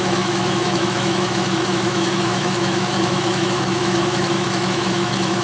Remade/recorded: remade